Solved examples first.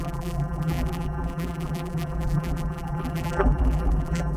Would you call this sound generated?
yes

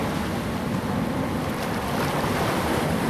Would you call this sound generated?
no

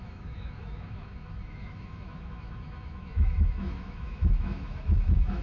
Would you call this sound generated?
yes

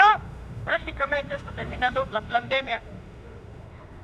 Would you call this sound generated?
yes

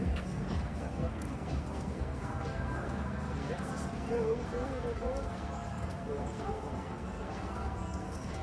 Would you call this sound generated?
yes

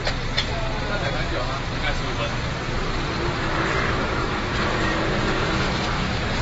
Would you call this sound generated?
no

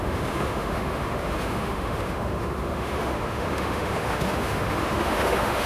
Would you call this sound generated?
yes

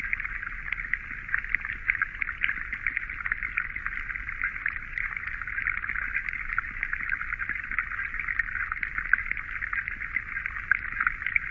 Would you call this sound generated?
no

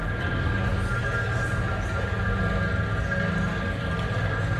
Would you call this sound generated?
no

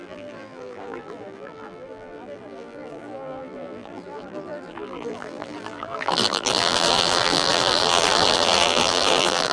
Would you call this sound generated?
yes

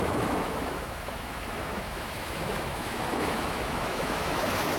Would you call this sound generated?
yes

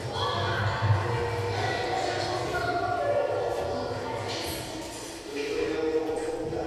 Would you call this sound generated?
no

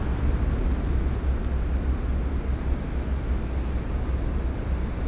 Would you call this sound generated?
no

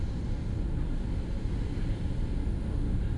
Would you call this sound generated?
no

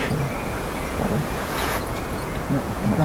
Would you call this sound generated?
yes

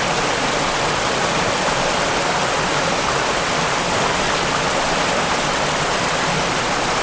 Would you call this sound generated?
no